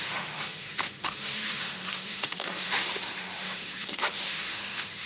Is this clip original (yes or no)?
no